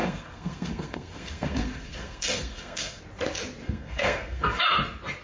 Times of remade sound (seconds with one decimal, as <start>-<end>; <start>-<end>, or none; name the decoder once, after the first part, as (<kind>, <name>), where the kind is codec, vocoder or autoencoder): 0.0-3.0 (codec, SNAC); 3.6-4.6